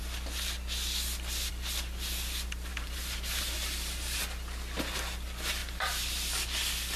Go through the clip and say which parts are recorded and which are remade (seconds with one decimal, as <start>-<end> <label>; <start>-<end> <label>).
0.0-2.7 recorded; 2.7-4.2 remade; 4.2-5.6 recorded; 5.6-6.3 remade; 6.3-7.0 recorded